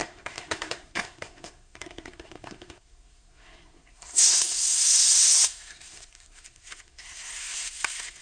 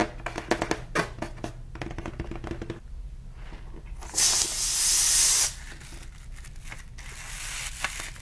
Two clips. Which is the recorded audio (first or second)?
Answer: second